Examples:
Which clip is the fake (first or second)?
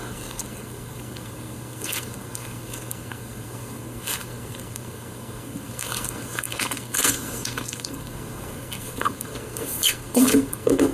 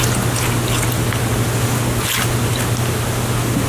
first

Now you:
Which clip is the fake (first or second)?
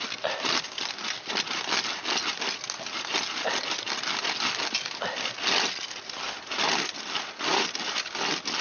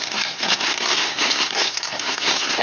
second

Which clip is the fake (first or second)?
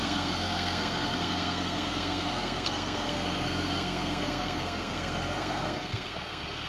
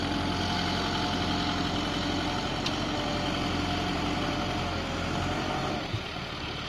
first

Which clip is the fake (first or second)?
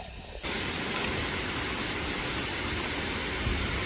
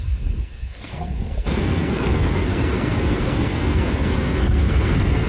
second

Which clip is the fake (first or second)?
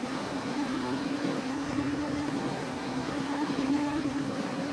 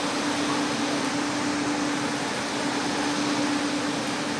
first